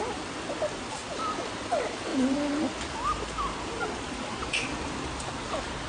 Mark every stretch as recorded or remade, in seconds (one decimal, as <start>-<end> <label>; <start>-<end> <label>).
0.0-4.4 recorded; 4.4-4.9 remade; 4.9-5.9 recorded